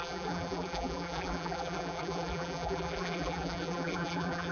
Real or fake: fake